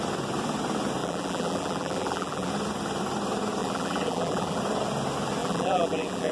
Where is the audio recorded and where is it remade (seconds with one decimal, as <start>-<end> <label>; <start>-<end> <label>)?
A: 0.0-1.0 recorded; 1.0-2.5 remade; 2.5-3.6 recorded; 3.6-4.6 remade; 4.6-5.4 recorded; 5.4-6.3 remade